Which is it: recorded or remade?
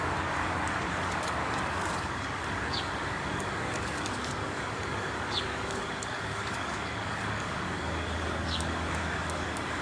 remade